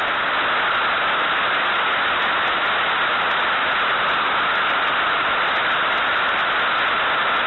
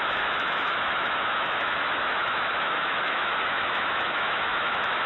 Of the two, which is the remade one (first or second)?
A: second